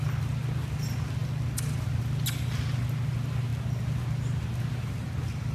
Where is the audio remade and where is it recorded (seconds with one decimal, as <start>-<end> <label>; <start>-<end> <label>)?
0.0-5.5 recorded